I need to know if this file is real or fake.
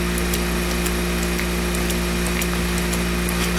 real